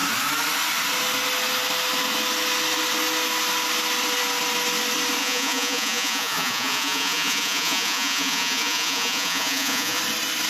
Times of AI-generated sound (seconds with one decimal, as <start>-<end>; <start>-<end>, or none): 5.2-10.0